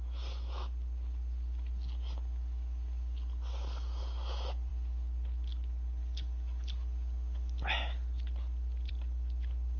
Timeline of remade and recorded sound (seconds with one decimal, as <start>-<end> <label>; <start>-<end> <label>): 0.0-9.8 recorded

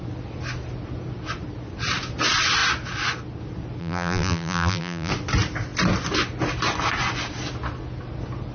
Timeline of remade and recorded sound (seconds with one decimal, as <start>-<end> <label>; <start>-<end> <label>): 0.0-3.8 recorded; 3.8-5.1 remade; 5.1-8.5 recorded

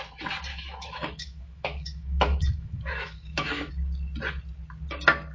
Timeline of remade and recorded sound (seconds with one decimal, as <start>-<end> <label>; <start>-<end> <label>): 0.0-0.5 recorded; 0.5-3.7 remade; 3.7-5.3 recorded

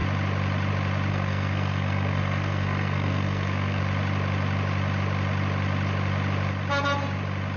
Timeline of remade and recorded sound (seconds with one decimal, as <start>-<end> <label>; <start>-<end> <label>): 0.0-1.1 recorded; 1.1-3.8 remade; 3.8-7.6 recorded

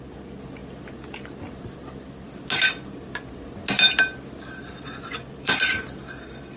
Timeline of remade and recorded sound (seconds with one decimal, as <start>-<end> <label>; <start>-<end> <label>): 0.0-5.2 recorded; 5.2-6.0 remade; 6.0-6.6 recorded

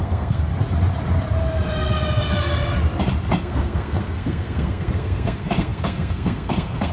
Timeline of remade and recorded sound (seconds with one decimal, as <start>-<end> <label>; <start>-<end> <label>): 0.0-0.5 remade; 0.5-3.4 recorded; 3.4-6.9 remade

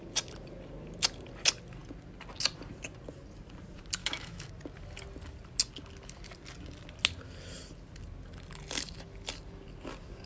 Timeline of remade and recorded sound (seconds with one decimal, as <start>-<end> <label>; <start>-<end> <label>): 0.0-4.0 recorded; 4.0-4.5 remade; 4.5-10.3 recorded